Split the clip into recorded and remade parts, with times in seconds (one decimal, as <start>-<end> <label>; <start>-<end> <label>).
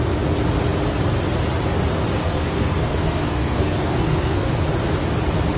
0.0-2.2 recorded; 2.2-4.5 remade; 4.5-5.6 recorded